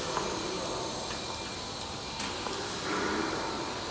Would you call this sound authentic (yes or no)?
yes